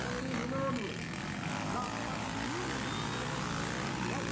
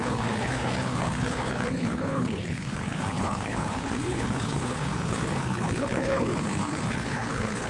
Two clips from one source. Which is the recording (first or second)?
first